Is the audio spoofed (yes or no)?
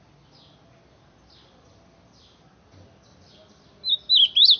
no